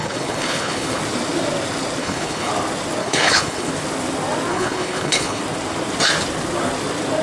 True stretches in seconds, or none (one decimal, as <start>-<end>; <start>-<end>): 1.0-2.0; 2.5-3.0; 3.7-4.5; 5.4-7.2